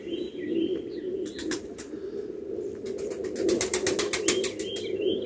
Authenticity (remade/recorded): recorded